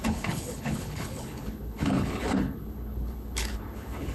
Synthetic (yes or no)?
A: yes